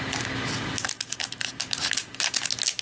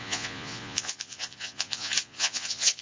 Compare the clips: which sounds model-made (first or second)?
second